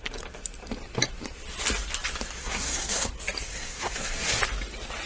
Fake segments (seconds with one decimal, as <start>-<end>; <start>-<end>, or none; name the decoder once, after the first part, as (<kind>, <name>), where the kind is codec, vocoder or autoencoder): 2.4-3.1 (codec, SNAC); 3.5-4.4